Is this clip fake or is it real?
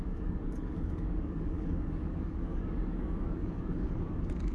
fake